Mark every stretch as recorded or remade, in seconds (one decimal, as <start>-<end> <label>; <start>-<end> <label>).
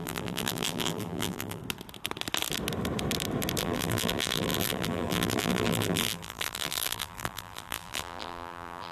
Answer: 0.0-1.6 remade; 1.6-3.6 recorded; 3.6-8.9 remade